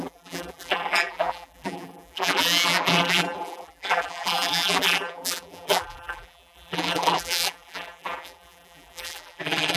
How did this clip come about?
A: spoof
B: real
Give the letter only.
A